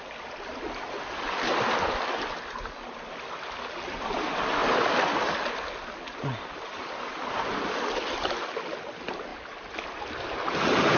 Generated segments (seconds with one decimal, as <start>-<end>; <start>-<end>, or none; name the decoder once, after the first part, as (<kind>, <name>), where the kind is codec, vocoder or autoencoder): 4.6-5.3 (vocoder, BigVGAN v2)

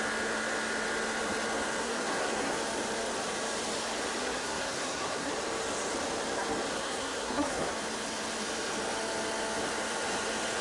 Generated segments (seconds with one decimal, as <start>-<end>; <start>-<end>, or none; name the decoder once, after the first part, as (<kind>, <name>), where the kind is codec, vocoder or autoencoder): 1.8-2.5 (codec, SNAC); 4.2-5.3; 6.7-7.7

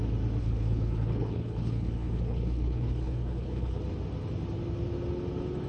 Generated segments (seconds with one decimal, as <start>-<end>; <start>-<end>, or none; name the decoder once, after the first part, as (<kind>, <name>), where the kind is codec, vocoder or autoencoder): 0.4-3.8 (codec, HILCodec)

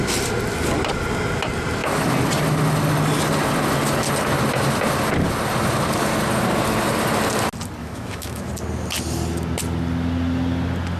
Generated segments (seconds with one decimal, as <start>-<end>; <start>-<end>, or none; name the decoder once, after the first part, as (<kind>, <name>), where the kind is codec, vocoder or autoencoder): 7.8-8.5 (autoencoder, DAC-VAE)

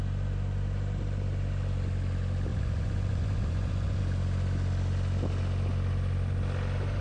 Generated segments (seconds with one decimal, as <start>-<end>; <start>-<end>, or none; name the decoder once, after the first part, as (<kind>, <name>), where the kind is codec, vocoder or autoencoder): 2.5-4.0 (vocoder, Vocos)

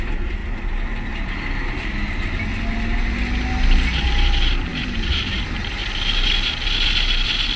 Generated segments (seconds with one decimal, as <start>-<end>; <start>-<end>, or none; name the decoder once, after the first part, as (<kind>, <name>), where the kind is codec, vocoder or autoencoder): 0.0-0.4 (vocoder, BigVGAN v2); 3.9-5.8

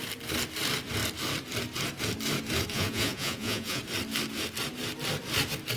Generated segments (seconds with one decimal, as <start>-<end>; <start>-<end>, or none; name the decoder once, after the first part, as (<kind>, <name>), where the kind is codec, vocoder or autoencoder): 2.7-3.8 (vocoder, Vocos)

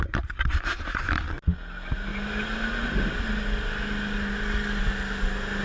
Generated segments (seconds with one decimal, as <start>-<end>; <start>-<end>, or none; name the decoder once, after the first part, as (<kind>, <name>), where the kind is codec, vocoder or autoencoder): none